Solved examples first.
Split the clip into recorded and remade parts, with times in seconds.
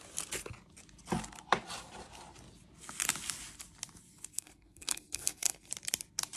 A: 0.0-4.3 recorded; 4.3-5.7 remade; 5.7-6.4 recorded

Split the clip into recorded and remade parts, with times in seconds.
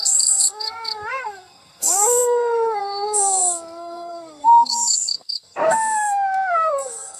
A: 0.0-7.2 remade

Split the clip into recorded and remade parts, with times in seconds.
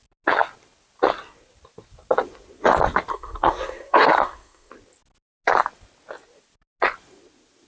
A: 0.0-3.1 recorded; 3.1-4.7 remade; 4.7-7.7 recorded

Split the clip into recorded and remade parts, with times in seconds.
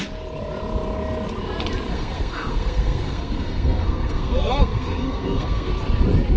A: 0.0-1.9 recorded; 1.9-5.7 remade; 5.7-6.4 recorded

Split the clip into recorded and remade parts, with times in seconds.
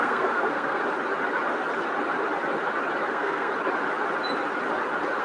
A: 0.0-0.8 remade; 0.8-3.1 recorded; 3.1-3.5 remade; 3.5-5.2 recorded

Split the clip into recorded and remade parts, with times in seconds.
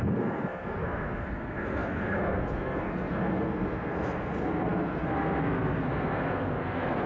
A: 0.0-7.1 remade